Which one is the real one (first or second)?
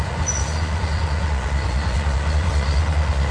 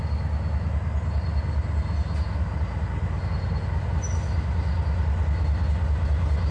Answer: second